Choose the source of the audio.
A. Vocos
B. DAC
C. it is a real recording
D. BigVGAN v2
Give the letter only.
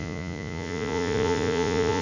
A